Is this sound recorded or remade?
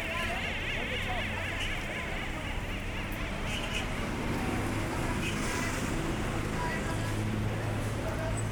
recorded